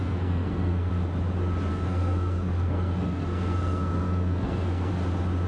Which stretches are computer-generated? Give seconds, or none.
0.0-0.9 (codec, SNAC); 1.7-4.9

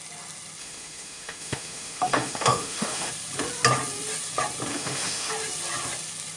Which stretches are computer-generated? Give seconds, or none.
0.6-3.1 (autoencoder, DAC-VAE); 4.7-5.3

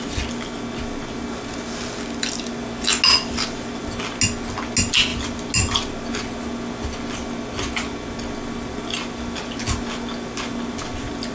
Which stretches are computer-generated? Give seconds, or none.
none

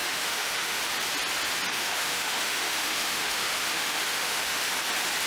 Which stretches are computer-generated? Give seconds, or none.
0.0-0.8 (autoencoder, DAC-VAE); 1.7-4.7

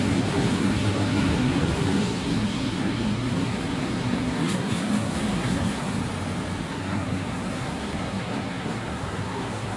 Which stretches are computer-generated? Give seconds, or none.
0.0-6.0 (codec, SNAC); 6.7-9.8

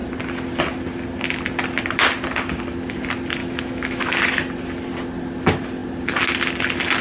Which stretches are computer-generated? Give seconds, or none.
3.4-4.2 (autoencoder, DAC-VAE)

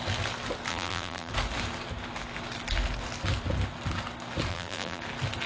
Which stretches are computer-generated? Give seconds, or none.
0.7-1.3 (vocoder, BigVGAN v2); 4.5-5.0